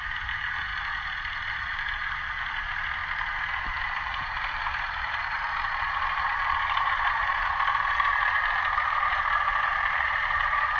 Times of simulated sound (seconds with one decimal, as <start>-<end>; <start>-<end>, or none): 0.0-0.7; 1.5-3.0; 3.6-8.1; 8.6-10.8